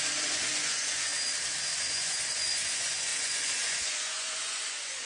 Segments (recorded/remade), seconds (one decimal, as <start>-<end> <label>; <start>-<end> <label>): 0.0-1.1 remade; 1.1-1.9 recorded; 1.9-5.1 remade